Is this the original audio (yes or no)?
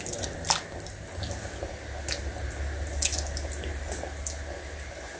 yes